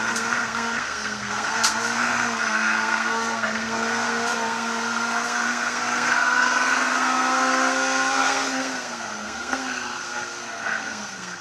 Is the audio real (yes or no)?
no